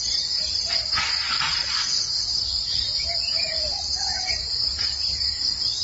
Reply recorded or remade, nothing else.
recorded